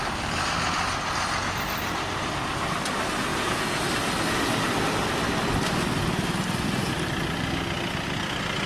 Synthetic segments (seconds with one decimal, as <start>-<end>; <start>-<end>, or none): 3.3-3.8